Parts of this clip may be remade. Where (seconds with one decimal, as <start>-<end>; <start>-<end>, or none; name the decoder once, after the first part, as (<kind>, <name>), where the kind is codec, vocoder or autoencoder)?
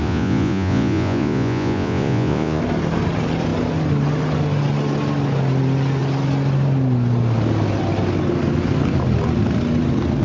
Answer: 0.0-2.6 (vocoder, Vocos)